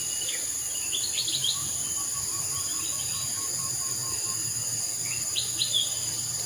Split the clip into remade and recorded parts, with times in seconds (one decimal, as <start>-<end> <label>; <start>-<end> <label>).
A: 0.0-6.5 recorded

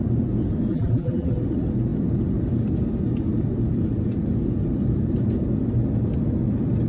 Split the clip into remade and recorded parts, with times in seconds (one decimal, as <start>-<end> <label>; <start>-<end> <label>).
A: 0.0-0.7 recorded; 0.7-1.3 remade; 1.3-6.9 recorded

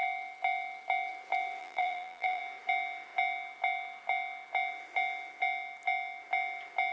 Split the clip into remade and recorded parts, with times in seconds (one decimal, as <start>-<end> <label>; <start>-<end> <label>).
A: 0.0-1.6 recorded; 1.6-2.4 remade; 2.4-6.9 recorded

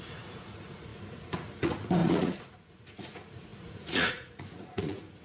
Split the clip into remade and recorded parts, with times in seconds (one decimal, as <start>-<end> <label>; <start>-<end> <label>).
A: 0.0-5.2 remade

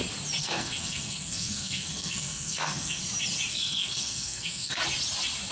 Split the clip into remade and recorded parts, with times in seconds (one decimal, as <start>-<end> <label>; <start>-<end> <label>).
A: 0.0-0.4 recorded; 0.4-3.0 remade; 3.0-3.5 recorded; 3.5-4.8 remade; 4.8-5.5 recorded

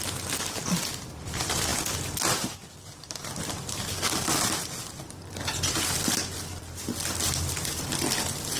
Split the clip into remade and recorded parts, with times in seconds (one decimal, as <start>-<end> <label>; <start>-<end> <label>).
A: 0.0-8.6 recorded